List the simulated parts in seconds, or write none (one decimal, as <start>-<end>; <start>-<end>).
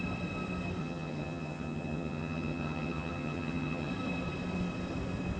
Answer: 0.8-3.9